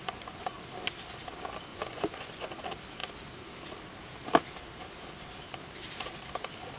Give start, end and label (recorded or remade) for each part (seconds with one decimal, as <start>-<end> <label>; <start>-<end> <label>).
0.0-1.7 recorded; 1.7-2.6 remade; 2.6-6.8 recorded